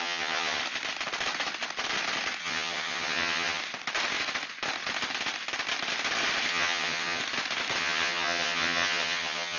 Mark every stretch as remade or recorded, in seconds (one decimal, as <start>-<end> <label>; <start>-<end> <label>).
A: 0.0-0.6 remade; 0.6-2.4 recorded; 2.4-3.6 remade; 3.6-6.5 recorded; 6.5-7.2 remade; 7.2-7.8 recorded; 7.8-9.6 remade